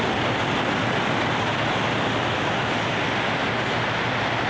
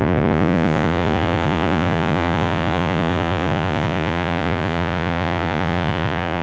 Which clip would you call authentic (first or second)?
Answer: first